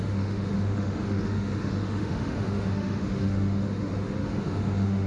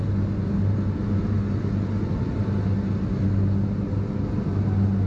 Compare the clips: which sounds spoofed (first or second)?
first